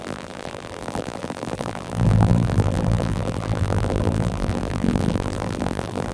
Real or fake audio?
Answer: fake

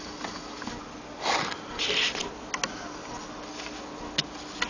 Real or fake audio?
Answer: real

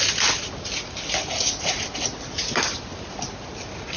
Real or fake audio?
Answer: real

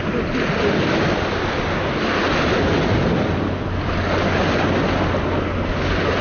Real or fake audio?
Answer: real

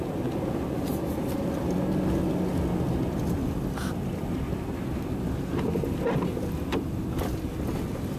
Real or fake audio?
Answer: real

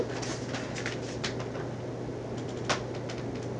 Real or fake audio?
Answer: real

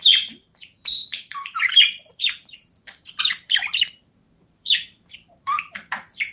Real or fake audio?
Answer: fake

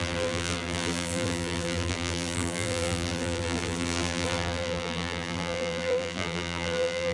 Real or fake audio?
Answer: fake